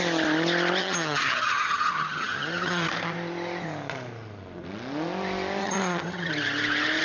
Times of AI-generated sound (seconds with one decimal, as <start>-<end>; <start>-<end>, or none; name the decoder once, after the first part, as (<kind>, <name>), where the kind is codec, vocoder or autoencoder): 0.8-2.9 (vocoder, HiFi-GAN); 5.6-6.3